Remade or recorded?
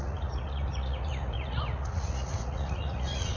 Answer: remade